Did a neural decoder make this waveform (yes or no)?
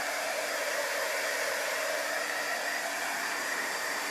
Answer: yes